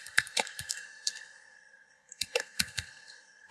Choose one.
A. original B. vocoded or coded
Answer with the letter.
B